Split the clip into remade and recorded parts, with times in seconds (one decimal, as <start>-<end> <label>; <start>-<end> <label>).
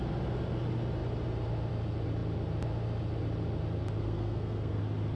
0.0-4.0 recorded; 4.0-4.8 remade; 4.8-5.2 recorded